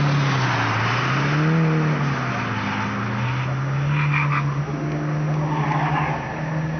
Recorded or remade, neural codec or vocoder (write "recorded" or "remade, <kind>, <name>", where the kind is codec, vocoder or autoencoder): recorded